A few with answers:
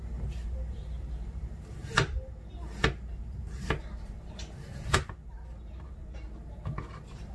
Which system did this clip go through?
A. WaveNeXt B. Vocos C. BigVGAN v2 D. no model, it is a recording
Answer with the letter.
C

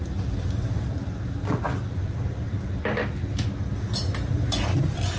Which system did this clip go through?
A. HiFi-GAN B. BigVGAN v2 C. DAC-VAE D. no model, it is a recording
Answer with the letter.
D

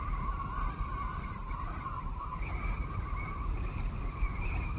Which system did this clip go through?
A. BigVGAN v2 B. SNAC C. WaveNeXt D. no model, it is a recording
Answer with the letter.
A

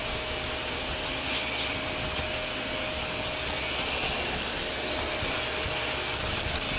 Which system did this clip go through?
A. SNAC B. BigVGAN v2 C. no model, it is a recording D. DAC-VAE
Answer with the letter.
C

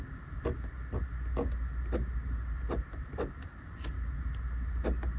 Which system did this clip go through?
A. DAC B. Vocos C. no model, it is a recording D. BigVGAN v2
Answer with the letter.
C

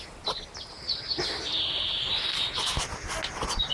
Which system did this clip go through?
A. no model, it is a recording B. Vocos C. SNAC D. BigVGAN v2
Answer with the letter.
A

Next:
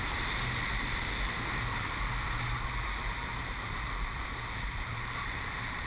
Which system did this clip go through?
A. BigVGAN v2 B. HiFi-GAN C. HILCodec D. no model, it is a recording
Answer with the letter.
A